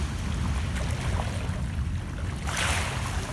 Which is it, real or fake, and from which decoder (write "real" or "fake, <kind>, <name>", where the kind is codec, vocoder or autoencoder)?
real